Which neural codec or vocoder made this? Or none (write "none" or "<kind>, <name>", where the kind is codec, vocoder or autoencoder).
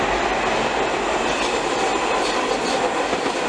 none